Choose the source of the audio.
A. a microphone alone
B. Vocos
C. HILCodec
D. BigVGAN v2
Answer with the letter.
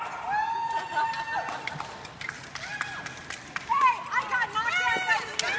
A